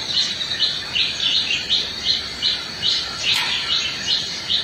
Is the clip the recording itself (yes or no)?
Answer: no